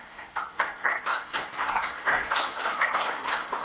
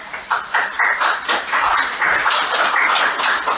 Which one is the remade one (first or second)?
first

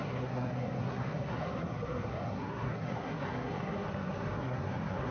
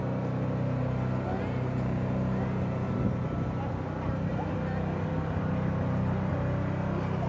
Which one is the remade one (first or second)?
first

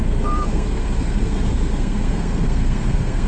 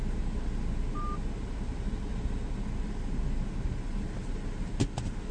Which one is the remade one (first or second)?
first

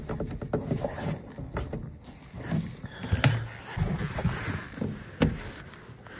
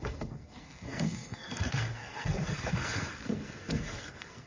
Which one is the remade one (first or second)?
second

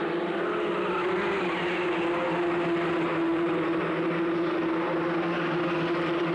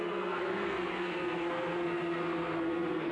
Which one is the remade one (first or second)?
second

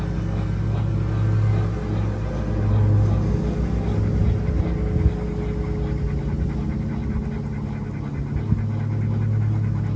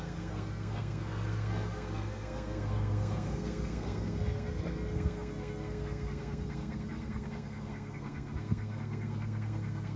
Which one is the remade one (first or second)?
second